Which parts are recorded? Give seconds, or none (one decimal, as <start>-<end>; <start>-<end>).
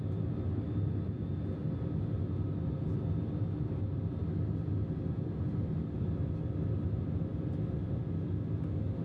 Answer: 0.0-7.3; 8.0-9.0